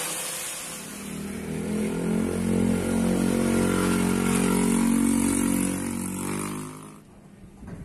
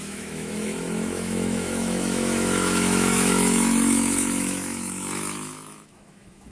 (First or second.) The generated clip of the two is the second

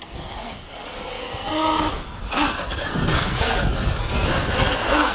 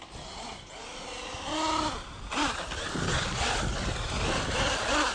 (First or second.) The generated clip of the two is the first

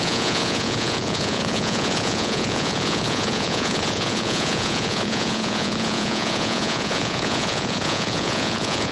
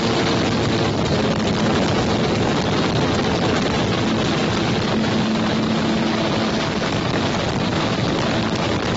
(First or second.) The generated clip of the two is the first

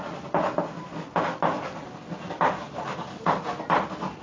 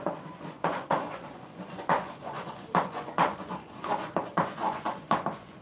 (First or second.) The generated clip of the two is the second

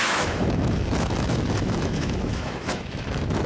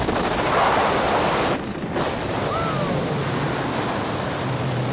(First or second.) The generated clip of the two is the first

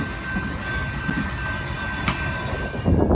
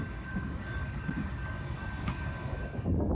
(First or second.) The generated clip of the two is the second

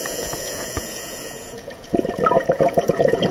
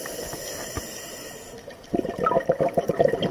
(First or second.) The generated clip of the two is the first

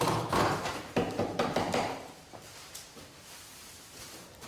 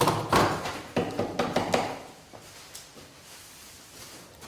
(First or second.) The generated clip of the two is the first